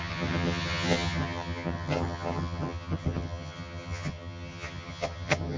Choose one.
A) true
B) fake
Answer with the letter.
B